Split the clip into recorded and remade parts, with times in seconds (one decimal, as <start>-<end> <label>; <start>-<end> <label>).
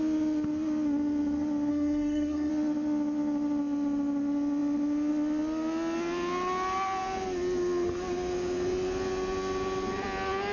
0.0-1.7 recorded; 1.7-2.5 remade; 2.5-10.5 recorded